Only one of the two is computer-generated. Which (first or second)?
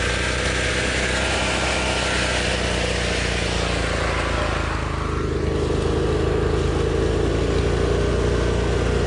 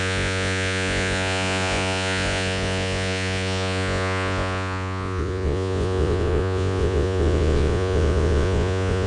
second